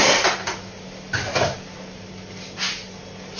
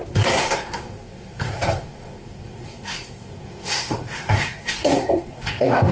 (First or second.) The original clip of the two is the first